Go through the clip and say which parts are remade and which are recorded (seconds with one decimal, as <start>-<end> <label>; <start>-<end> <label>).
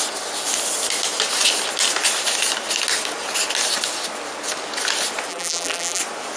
0.0-5.3 recorded; 5.3-6.0 remade; 6.0-6.4 recorded